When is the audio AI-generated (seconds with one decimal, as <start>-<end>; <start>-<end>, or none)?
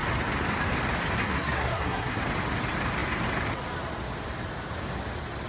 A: 1.2-2.2